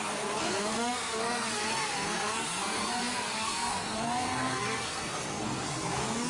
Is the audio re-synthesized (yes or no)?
yes